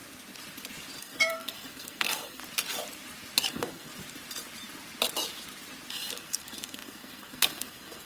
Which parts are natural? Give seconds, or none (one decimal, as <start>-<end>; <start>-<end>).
0.0-1.0; 2.4-3.5; 3.9-5.9

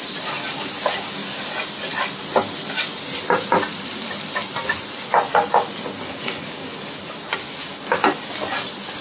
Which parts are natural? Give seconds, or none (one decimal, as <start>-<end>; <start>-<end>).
0.0-9.0

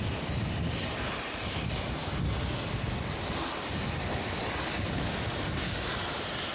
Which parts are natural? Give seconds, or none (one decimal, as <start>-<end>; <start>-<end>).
0.0-6.5

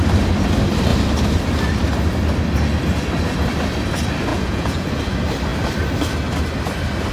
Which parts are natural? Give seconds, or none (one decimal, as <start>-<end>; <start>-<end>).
0.0-4.3; 5.0-7.1

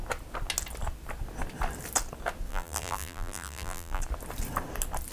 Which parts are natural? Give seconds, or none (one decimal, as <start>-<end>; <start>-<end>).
0.0-2.5; 4.0-5.1

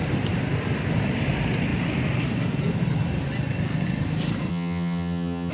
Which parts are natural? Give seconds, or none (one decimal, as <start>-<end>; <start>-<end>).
0.0-4.5

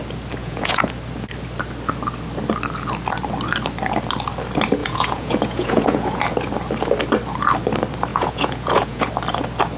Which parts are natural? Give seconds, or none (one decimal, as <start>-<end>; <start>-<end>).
0.0-0.4; 0.9-4.8; 6.2-8.1; 9.1-9.8